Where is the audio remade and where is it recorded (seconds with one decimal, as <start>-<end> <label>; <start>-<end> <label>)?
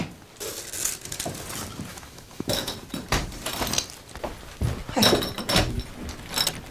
0.0-1.9 recorded; 1.9-2.7 remade; 2.7-6.7 recorded